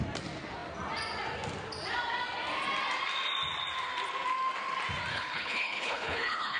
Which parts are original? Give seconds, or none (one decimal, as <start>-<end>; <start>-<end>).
0.0-5.1